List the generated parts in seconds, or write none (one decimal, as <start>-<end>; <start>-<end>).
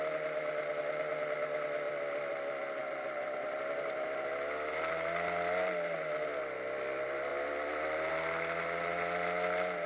none